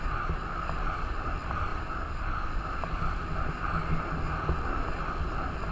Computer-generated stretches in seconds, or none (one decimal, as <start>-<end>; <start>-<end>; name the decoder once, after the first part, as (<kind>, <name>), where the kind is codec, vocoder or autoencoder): none